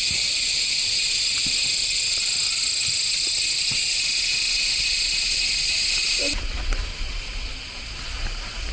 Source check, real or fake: real